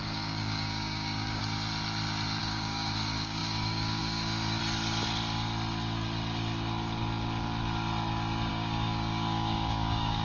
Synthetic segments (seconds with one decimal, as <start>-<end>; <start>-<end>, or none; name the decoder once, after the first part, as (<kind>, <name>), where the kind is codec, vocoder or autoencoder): 0.0-1.4 (codec, DAC); 2.4-4.6; 8.5-10.2